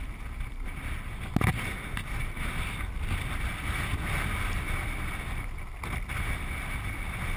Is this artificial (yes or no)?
no